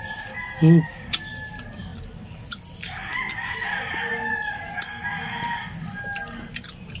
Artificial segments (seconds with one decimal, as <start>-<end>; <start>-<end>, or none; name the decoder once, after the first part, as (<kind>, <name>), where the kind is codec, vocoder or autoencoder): none